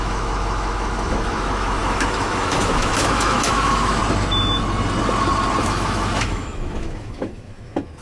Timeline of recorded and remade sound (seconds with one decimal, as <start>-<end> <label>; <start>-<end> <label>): 0.0-4.0 remade; 4.0-5.6 recorded; 5.6-8.0 remade